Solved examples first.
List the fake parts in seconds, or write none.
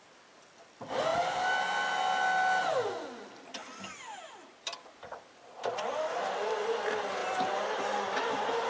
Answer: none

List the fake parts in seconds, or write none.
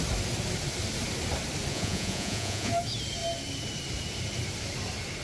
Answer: 1.7-2.7 (vocoder, Vocos)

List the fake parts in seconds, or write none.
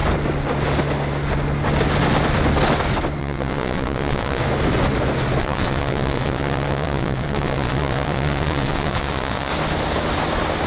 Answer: 3.2-4.4 (vocoder, WaveNeXt); 5.4-9.5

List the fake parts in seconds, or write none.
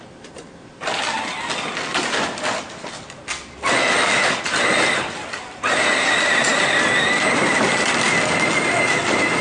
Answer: none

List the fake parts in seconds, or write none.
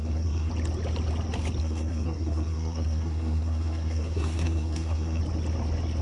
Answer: 0.0-0.5 (codec, SNAC); 1.6-5.2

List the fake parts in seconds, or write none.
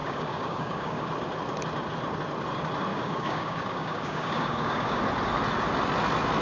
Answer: 0.0-1.1 (codec, DAC); 2.9-5.0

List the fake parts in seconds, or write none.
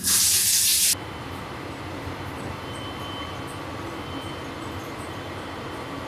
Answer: 0.0-0.7 (vocoder, BigVGAN v2); 1.2-6.1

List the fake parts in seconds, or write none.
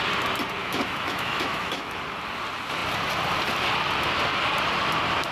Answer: 0.6-2.0 (autoencoder, DAC-VAE)